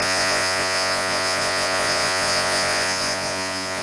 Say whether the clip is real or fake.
fake